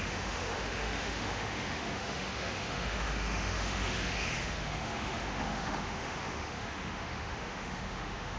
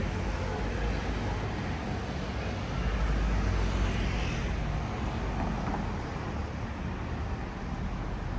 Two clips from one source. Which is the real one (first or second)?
second